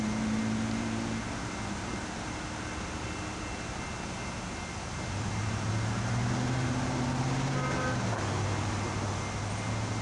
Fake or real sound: real